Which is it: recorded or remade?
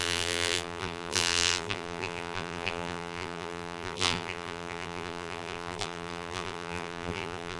remade